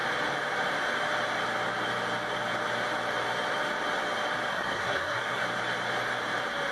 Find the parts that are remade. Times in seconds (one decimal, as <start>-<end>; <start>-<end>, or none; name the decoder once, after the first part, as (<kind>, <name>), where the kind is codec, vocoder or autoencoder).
4.5-5.4 (codec, SNAC)